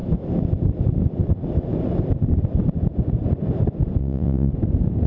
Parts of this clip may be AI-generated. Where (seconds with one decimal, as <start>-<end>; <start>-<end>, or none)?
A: 4.0-4.5